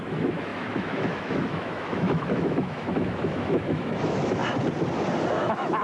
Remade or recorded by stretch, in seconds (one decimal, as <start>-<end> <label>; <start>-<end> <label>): 0.0-4.4 remade; 4.4-5.3 recorded; 5.3-5.8 remade

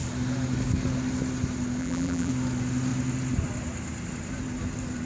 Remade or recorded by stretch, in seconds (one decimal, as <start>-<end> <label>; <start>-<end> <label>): 0.0-1.8 recorded; 1.8-2.3 remade; 2.3-5.0 recorded

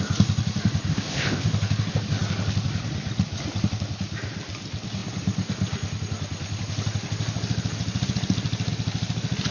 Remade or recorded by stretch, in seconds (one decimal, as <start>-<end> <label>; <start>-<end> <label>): 0.0-0.9 recorded; 0.9-1.4 remade; 1.4-9.5 recorded